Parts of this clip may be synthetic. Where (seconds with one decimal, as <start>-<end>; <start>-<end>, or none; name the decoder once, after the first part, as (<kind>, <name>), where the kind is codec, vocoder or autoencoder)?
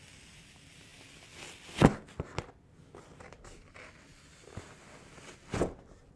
none